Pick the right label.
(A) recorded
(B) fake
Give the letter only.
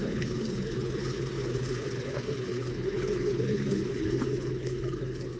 B